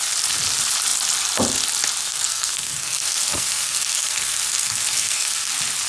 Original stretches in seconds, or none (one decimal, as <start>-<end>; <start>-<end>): 0.0-2.0; 5.5-5.9